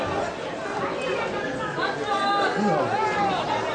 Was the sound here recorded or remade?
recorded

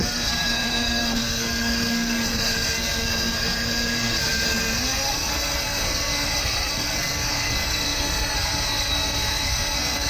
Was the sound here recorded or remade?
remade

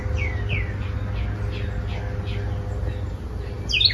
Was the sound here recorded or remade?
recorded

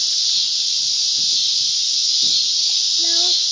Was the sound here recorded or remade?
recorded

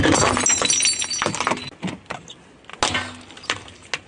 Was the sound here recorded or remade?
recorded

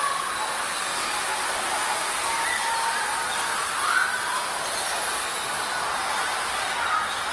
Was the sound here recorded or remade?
recorded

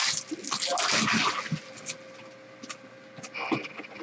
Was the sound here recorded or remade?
recorded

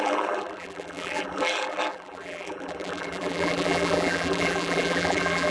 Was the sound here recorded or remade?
remade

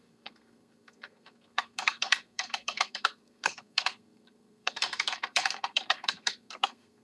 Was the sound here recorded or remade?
remade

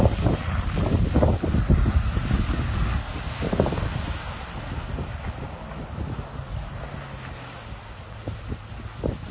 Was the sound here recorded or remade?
recorded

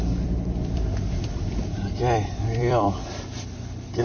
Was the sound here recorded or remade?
remade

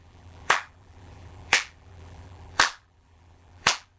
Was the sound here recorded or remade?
remade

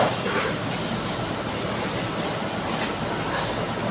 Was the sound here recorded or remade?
recorded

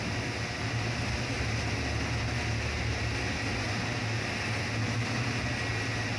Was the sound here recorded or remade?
recorded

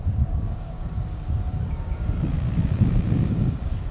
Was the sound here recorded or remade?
remade